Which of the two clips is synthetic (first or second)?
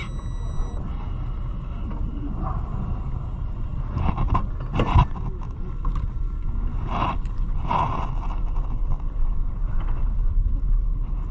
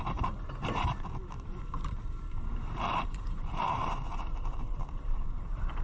second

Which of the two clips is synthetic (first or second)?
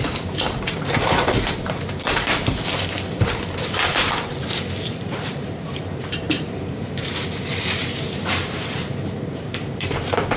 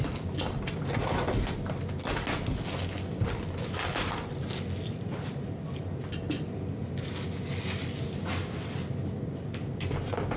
first